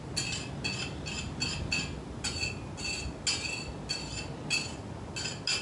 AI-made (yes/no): no